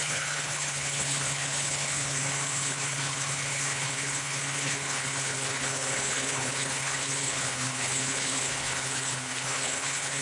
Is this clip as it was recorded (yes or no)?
no